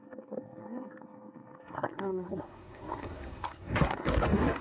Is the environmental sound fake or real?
fake